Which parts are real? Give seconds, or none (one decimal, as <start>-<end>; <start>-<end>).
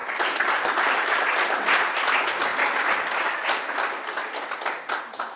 1.1-5.4